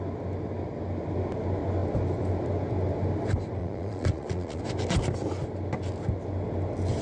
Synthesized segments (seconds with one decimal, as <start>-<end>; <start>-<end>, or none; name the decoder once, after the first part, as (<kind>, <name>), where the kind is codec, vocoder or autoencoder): 3.6-4.6 (vocoder, Vocos)